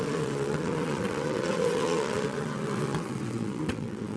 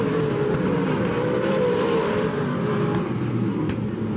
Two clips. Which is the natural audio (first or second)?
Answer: second